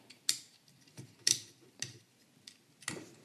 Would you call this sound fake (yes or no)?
no